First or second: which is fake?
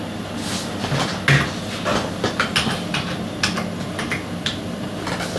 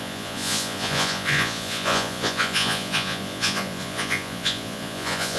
second